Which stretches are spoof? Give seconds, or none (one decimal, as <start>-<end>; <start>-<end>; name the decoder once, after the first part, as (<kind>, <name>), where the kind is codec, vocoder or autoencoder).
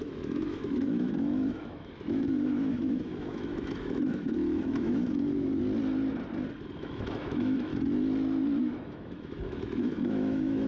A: 0.0-5.5 (autoencoder, DAC-VAE); 6.8-7.7; 8.6-10.7